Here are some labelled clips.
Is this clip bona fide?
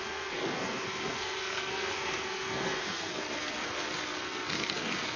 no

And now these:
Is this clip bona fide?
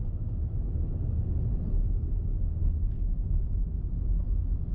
yes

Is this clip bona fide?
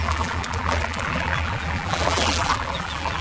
no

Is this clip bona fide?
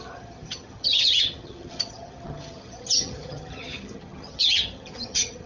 no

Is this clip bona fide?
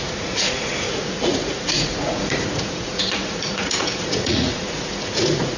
no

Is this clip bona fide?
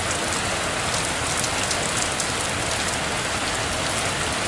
yes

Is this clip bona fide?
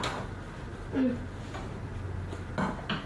yes